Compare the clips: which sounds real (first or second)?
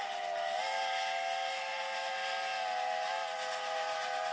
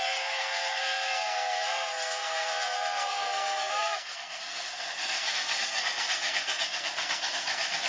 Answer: first